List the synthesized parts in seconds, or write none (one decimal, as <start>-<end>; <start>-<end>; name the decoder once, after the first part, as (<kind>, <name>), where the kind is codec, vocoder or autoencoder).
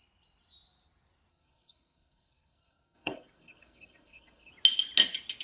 1.3-4.5 (codec, SNAC)